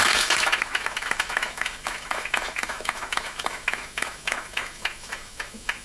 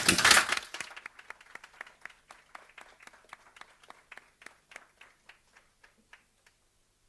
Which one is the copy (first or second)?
first